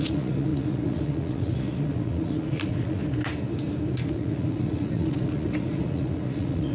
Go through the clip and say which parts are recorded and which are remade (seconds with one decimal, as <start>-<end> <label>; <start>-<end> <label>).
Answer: 0.0-3.0 remade; 3.0-4.1 recorded; 4.1-6.7 remade